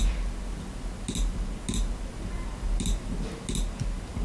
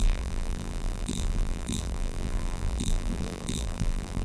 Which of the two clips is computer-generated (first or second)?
second